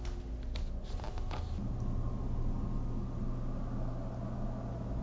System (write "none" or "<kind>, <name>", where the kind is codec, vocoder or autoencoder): none